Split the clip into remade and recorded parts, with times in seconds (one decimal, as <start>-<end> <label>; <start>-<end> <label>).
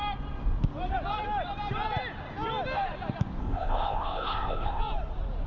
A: 0.0-3.4 recorded; 3.4-4.8 remade; 4.8-5.5 recorded